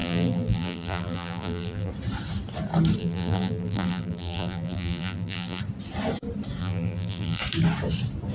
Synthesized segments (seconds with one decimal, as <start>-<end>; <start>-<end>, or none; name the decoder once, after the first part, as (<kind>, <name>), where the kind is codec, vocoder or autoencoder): 0.0-1.9 (vocoder, BigVGAN v2); 3.0-5.6; 6.6-7.4